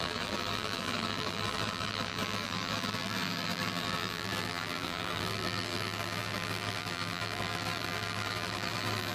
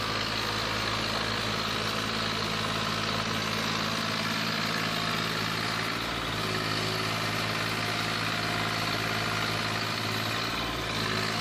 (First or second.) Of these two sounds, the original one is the second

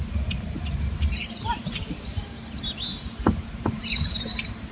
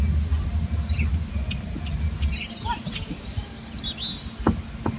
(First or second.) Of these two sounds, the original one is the second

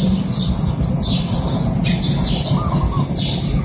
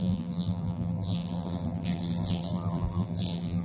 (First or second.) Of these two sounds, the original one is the first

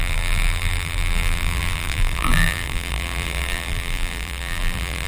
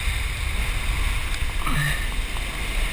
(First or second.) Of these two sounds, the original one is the second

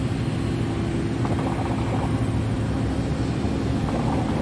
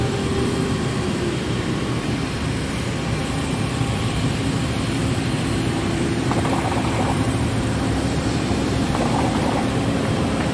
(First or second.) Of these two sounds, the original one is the first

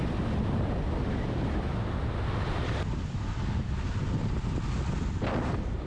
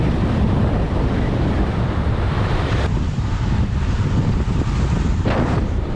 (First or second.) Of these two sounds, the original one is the first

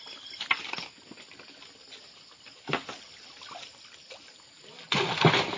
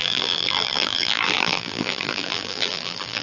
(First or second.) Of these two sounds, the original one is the first